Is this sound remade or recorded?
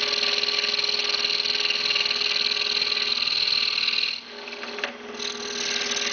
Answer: recorded